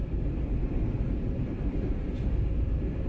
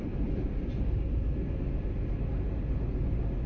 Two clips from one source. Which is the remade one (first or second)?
first